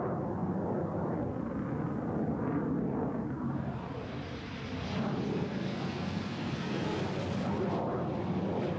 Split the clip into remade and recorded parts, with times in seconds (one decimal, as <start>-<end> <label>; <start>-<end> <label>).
0.0-5.3 recorded; 5.3-7.0 remade; 7.0-8.8 recorded